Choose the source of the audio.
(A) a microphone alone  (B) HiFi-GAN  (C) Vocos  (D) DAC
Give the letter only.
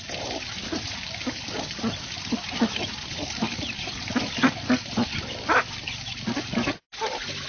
A